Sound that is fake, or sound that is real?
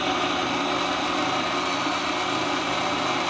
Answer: real